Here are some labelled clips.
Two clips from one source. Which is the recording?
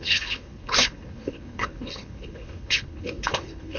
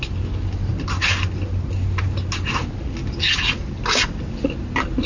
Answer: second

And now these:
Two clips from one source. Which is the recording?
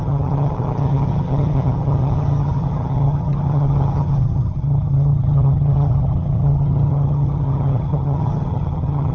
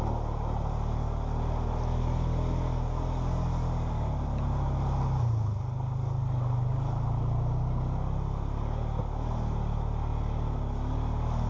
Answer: second